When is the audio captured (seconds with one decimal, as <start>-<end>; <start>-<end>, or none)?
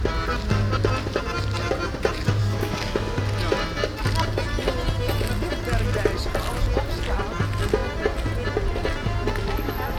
0.0-2.4; 3.2-10.0